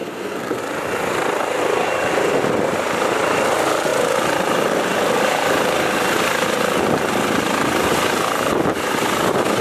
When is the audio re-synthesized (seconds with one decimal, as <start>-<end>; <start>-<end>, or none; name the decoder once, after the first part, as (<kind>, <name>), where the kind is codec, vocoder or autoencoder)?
0.0-0.6 (codec, SNAC)